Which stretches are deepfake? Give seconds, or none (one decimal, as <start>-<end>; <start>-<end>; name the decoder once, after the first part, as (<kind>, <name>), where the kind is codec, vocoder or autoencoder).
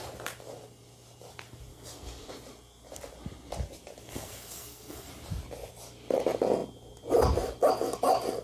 1.7-2.3 (codec, SNAC); 4.0-5.1